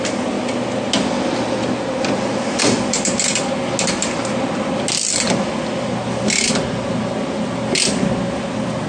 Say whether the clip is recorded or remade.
recorded